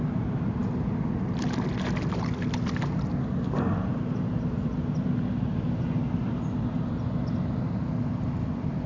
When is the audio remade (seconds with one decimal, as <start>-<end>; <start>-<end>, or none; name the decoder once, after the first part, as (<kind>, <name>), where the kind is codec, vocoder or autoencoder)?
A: none